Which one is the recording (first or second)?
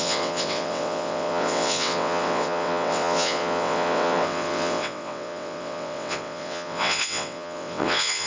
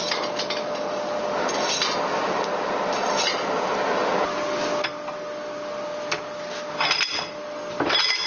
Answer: second